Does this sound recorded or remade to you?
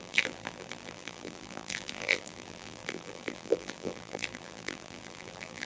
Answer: remade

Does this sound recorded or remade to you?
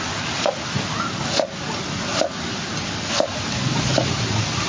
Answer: recorded